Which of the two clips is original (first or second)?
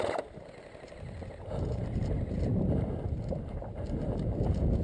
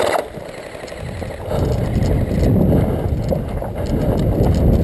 second